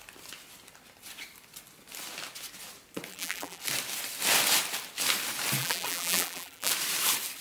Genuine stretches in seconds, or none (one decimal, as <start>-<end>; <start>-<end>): 0.0-3.1; 3.6-5.6; 6.7-7.4